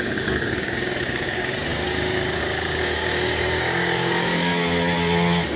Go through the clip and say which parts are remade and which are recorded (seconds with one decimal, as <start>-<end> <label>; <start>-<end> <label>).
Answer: 0.0-4.5 remade; 4.5-5.6 recorded